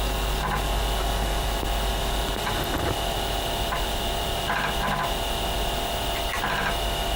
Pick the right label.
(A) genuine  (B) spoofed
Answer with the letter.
A